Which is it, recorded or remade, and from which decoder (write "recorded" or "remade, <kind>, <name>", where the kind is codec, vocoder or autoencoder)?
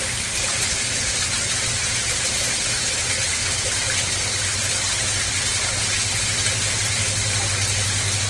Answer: recorded